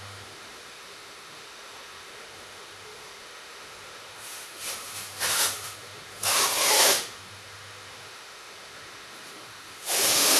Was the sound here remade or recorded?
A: remade